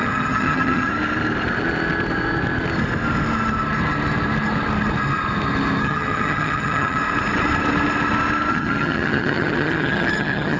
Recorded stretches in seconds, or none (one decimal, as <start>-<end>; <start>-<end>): 0.9-5.8; 7.0-8.5